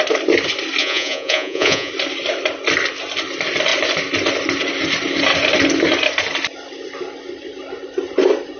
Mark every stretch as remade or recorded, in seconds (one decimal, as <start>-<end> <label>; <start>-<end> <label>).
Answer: 0.0-0.8 recorded; 0.8-1.9 remade; 1.9-8.6 recorded